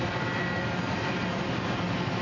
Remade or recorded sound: recorded